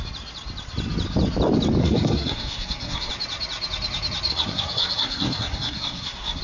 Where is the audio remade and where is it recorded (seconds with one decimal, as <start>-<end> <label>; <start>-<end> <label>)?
0.0-1.8 recorded; 1.8-3.1 remade; 3.1-4.3 recorded; 4.3-6.4 remade